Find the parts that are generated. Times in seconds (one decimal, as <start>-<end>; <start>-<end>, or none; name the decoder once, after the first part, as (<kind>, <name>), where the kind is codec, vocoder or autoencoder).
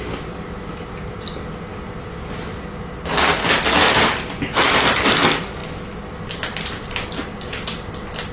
none